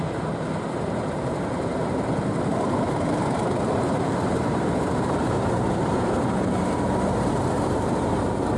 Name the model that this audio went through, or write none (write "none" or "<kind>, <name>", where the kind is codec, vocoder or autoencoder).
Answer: vocoder, BigVGAN v2